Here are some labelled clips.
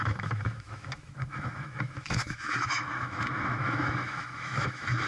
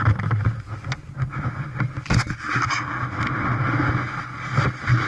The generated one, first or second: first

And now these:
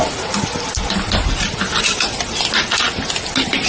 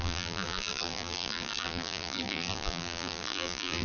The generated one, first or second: second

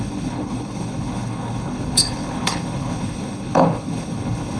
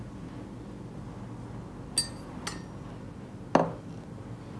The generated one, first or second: first